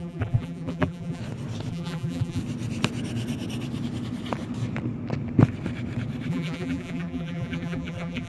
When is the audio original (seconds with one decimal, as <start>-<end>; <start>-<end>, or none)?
1.2-1.7; 2.4-6.3

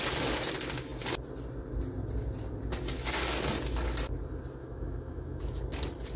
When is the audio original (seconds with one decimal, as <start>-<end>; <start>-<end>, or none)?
0.0-4.6; 5.6-6.2

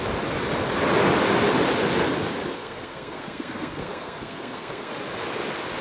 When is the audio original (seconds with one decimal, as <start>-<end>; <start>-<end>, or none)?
0.0-2.6; 4.9-5.8